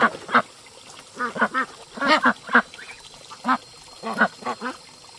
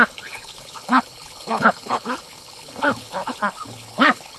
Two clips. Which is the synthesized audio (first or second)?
second